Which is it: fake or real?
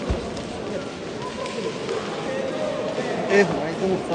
real